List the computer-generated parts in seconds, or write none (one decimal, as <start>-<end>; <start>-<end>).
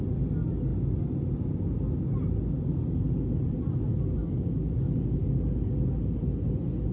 4.2-5.3